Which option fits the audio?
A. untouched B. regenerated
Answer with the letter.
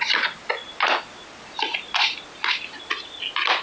A